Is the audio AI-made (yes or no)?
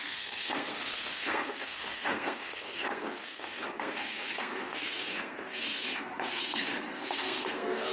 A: yes